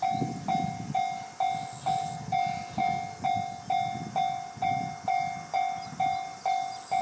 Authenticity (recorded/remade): recorded